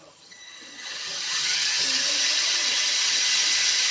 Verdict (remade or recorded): remade